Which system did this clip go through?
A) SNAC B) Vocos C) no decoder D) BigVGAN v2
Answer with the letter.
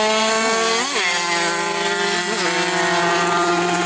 C